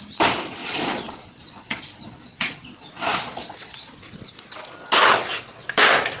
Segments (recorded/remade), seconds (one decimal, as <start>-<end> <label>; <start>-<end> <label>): 0.0-0.6 recorded; 0.6-4.0 remade; 4.0-6.2 recorded